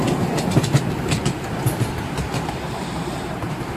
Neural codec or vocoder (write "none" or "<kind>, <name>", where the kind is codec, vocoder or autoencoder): none